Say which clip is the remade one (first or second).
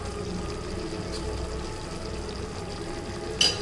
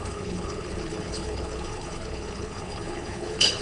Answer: second